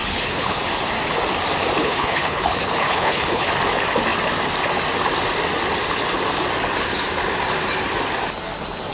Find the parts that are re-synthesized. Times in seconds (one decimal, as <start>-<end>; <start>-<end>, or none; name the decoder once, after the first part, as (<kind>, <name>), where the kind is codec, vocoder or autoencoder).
0.0-0.6 (codec, HILCodec); 1.8-3.5